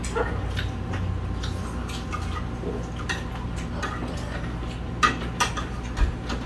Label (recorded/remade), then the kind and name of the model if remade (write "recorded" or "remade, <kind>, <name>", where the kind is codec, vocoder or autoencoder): recorded